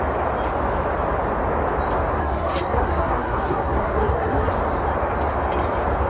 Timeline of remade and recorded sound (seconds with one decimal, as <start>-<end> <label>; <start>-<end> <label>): 0.0-2.2 recorded; 2.2-4.5 remade; 4.5-6.1 recorded